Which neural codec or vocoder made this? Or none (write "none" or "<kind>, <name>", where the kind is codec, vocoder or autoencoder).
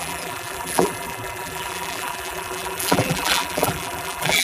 vocoder, BigVGAN v2